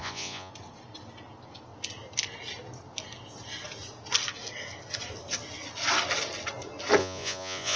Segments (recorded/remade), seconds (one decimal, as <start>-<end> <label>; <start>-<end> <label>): 0.0-0.5 remade; 0.5-7.0 recorded; 7.0-7.8 remade